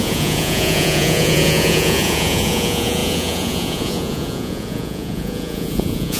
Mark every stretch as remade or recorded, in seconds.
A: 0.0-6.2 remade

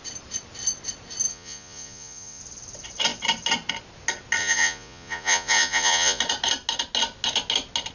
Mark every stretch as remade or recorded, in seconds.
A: 0.0-1.3 recorded; 1.3-2.4 remade; 2.4-4.4 recorded; 4.4-6.2 remade; 6.2-7.9 recorded